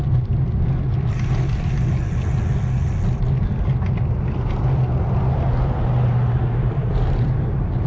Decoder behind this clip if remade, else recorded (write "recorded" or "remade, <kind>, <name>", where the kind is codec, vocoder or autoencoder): recorded